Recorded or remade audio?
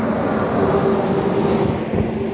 recorded